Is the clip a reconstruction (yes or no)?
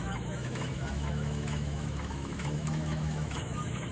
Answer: yes